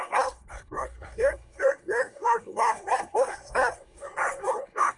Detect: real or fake fake